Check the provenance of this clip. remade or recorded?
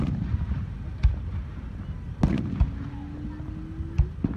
recorded